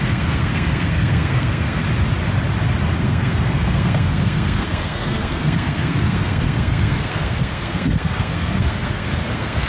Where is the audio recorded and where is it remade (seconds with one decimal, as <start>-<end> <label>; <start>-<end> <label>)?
0.0-1.8 remade; 1.8-3.0 recorded; 3.0-9.7 remade